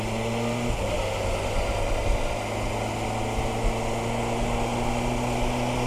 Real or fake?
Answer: real